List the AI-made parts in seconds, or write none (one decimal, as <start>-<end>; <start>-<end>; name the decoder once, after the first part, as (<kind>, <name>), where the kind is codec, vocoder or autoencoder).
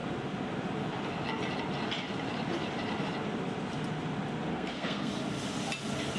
4.5-5.1 (codec, SNAC)